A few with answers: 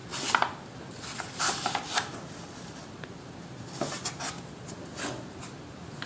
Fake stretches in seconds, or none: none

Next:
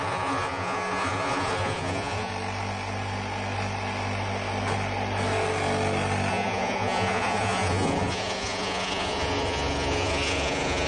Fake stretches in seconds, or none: 0.0-2.3 (vocoder, Vocos); 6.3-10.9

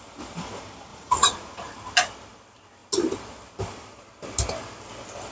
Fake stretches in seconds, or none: 0.9-1.7 (vocoder, Vocos)